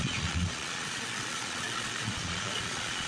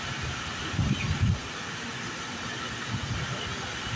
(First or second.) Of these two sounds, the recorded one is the second